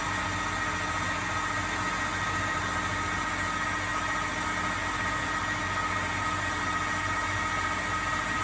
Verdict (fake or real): real